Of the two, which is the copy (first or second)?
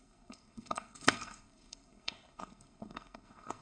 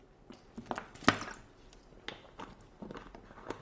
first